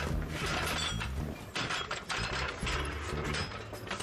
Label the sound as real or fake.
real